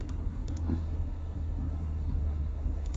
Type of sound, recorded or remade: remade